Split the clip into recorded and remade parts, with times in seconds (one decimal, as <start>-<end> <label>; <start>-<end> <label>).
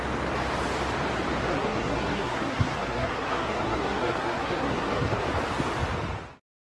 0.0-1.5 recorded; 1.5-5.2 remade; 5.2-6.6 recorded